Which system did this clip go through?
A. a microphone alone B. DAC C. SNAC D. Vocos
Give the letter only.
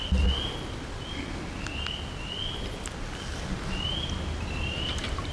A